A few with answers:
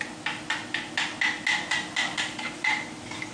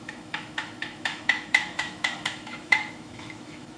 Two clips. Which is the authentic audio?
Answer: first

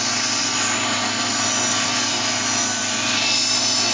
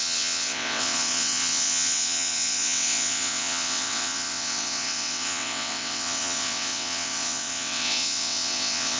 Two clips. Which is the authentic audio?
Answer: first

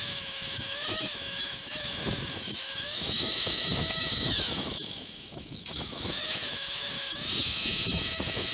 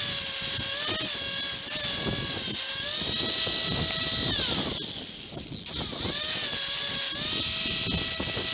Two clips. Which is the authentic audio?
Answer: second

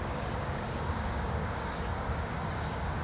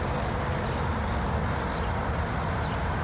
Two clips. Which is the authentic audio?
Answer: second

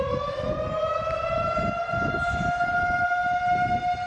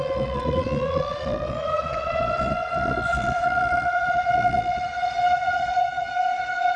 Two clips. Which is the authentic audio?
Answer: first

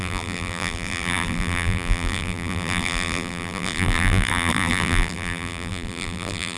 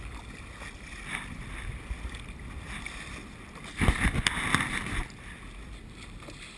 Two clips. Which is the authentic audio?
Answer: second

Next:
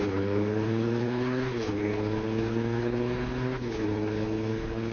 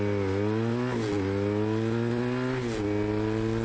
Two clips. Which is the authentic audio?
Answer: second